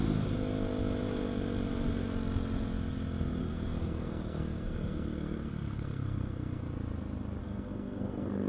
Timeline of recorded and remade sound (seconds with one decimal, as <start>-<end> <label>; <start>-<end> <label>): 0.0-3.4 recorded; 3.4-6.6 remade; 6.6-7.4 recorded; 7.4-8.5 remade